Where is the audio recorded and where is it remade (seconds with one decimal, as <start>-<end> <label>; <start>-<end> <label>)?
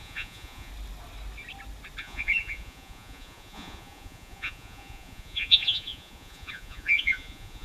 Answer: 0.0-0.7 remade; 0.7-2.0 recorded; 2.0-7.6 remade